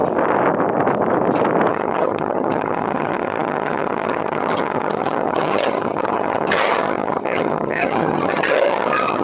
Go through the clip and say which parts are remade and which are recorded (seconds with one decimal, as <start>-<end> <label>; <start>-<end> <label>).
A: 0.0-1.7 recorded; 1.7-9.2 remade